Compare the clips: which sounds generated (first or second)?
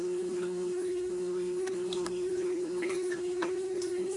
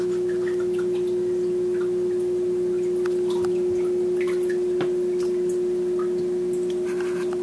first